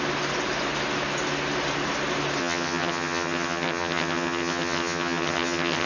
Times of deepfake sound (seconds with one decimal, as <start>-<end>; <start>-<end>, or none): 2.4-5.9